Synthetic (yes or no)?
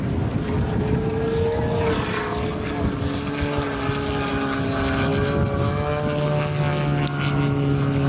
no